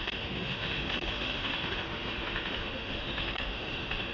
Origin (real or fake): fake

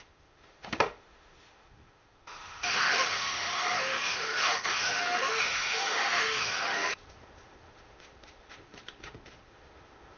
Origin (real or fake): fake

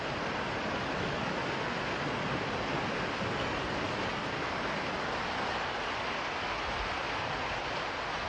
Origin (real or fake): real